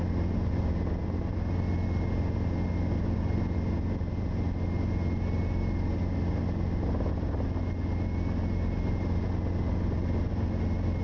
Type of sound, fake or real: real